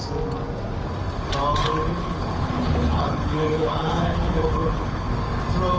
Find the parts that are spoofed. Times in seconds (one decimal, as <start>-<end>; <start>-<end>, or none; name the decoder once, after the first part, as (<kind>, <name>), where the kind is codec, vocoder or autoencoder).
1.6-5.1 (codec, HILCodec)